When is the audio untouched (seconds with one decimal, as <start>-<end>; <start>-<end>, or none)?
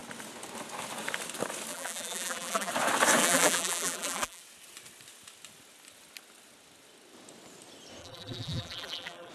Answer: 0.0-1.7; 2.7-3.2; 4.4-8.0